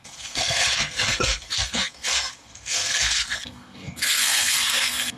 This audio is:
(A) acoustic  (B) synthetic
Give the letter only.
B